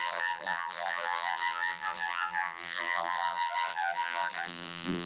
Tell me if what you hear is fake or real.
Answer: fake